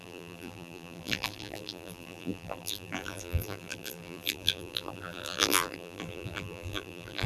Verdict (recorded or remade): remade